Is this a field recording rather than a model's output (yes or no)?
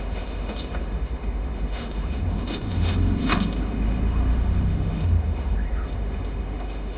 no